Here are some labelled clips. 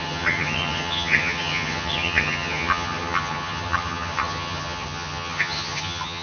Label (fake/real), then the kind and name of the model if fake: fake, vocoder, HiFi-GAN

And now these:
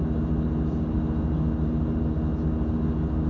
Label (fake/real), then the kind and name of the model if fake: real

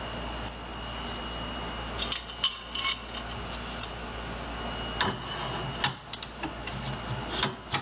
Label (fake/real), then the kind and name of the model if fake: real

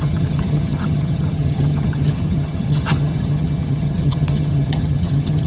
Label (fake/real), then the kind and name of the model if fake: fake, vocoder, HiFi-GAN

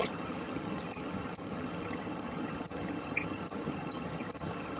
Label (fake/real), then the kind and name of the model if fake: fake, vocoder, HiFi-GAN